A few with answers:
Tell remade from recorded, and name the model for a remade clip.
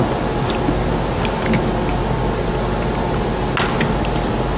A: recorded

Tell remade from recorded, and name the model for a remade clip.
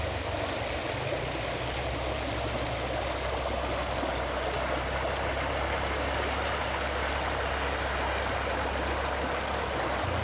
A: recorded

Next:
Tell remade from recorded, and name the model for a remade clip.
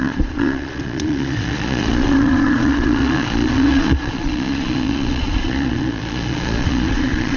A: remade, vocoder, Vocos